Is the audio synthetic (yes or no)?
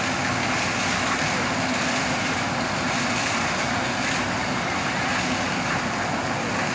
no